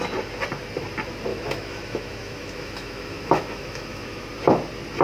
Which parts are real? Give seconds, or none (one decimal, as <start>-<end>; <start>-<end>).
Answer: 0.0-1.3; 4.3-5.0